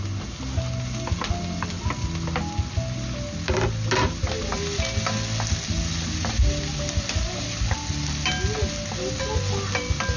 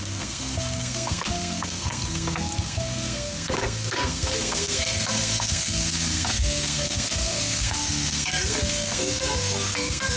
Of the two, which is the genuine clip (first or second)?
first